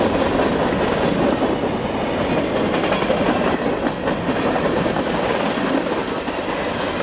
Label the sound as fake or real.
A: real